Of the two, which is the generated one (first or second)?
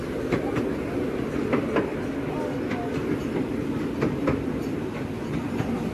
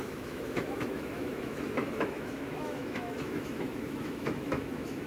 second